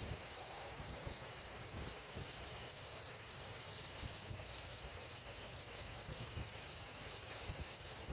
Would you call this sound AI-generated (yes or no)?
yes